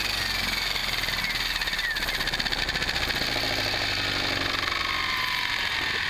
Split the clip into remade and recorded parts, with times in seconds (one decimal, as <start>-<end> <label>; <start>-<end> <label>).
0.0-6.1 recorded